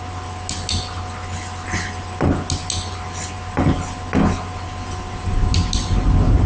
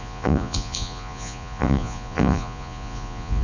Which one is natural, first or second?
first